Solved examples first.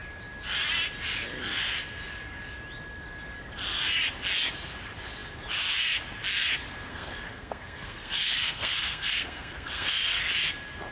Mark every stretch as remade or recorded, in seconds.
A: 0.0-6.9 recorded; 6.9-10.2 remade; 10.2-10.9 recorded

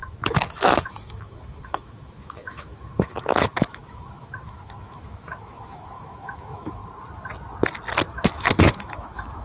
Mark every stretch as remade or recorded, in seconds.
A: 0.0-6.8 remade; 6.8-8.0 recorded; 8.0-9.4 remade